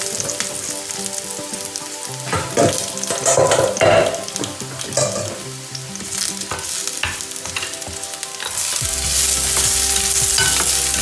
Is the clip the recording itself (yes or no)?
yes